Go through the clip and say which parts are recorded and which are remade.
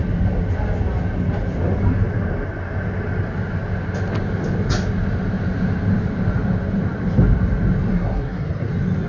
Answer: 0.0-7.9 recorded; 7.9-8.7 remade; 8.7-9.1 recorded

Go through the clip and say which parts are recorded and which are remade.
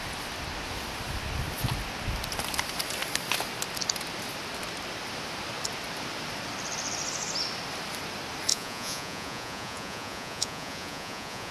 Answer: 0.0-8.5 recorded; 8.5-11.5 remade